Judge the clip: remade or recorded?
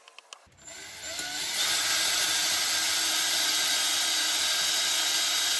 recorded